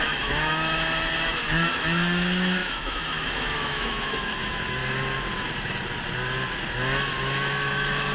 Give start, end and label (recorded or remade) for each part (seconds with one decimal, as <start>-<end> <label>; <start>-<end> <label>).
0.0-4.8 remade; 4.8-7.2 recorded; 7.2-8.1 remade